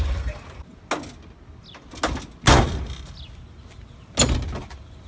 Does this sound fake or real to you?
real